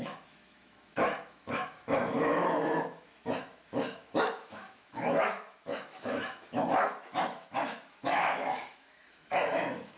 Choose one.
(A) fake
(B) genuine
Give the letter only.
A